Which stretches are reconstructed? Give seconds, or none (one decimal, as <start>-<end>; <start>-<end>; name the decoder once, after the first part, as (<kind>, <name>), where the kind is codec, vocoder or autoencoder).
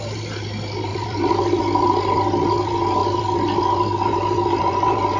0.9-2.5 (vocoder, BigVGAN v2)